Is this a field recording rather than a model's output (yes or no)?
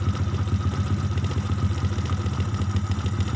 yes